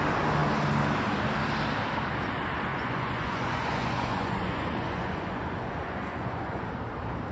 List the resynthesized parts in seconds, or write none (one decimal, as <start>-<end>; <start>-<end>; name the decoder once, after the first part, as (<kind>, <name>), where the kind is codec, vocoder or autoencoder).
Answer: 2.7-6.6 (vocoder, Vocos)